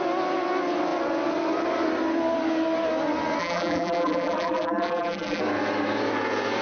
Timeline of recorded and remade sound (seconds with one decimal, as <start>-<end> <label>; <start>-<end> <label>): 0.0-3.4 recorded; 3.4-5.4 remade; 5.4-6.6 recorded